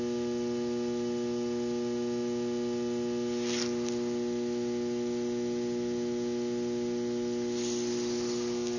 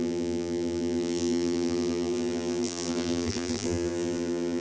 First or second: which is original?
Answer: first